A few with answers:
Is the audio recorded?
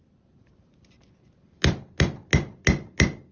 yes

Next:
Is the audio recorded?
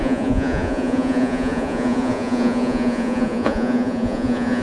no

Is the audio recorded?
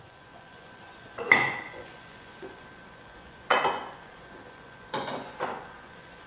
no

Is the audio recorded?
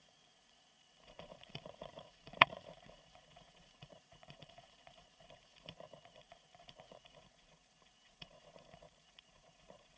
no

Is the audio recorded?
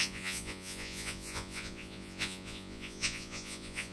no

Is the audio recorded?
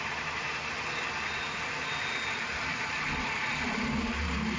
yes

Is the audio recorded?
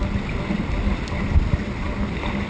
yes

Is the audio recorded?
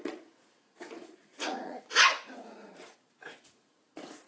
no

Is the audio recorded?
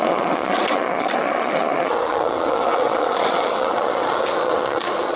no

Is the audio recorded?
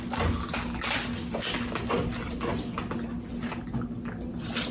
yes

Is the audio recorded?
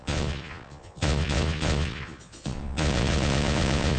no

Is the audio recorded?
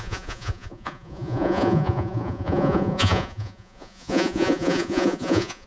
no